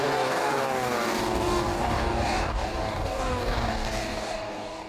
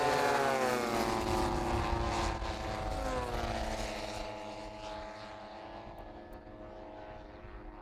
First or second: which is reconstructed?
first